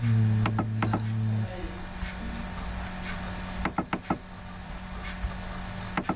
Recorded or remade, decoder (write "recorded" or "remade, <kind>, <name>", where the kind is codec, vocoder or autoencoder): recorded